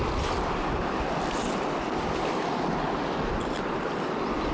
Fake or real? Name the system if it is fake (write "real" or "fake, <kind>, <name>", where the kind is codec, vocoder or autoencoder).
real